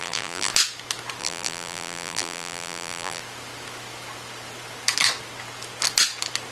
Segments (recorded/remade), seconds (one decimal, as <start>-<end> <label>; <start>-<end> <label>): 0.0-0.5 remade; 0.5-1.2 recorded; 1.2-3.2 remade; 3.2-6.5 recorded